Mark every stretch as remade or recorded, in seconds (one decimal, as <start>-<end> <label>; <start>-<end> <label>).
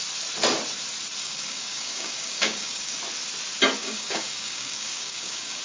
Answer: 0.0-1.2 recorded; 1.2-3.0 remade; 3.0-3.8 recorded; 3.8-5.6 remade